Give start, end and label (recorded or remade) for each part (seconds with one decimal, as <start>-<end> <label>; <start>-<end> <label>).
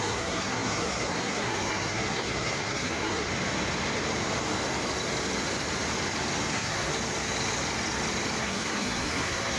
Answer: 0.0-3.3 remade; 3.3-6.5 recorded; 6.5-6.9 remade; 6.9-8.4 recorded; 8.4-9.6 remade